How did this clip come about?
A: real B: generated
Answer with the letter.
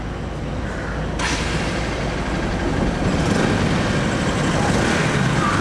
A